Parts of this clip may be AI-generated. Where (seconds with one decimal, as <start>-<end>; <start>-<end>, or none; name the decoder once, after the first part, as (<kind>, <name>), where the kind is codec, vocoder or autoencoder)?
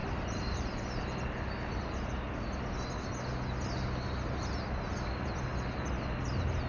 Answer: 0.0-0.6 (vocoder, BigVGAN v2)